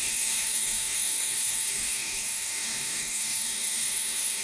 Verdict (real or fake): fake